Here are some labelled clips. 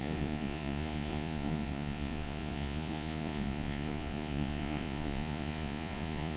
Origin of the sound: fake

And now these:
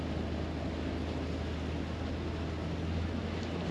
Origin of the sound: real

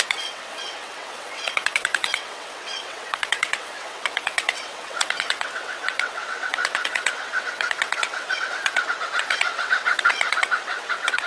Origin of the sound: fake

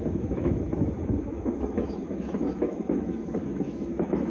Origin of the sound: fake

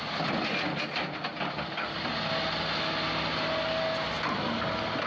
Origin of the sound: real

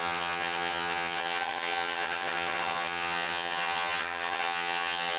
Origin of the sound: fake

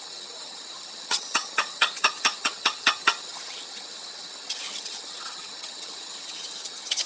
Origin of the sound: fake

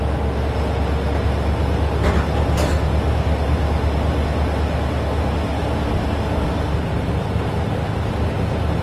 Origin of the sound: real